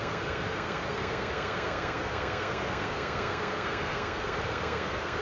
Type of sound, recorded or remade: remade